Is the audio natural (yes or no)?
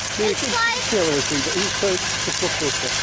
yes